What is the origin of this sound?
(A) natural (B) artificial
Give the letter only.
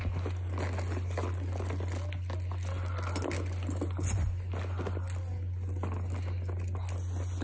A